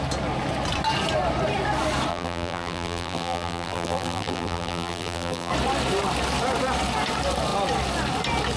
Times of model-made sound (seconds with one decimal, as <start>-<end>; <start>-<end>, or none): 2.1-5.5